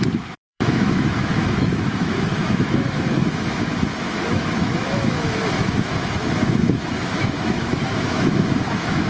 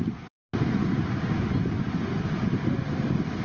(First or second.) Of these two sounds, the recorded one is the second